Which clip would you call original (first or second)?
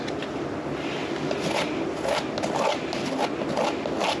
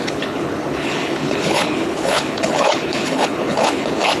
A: first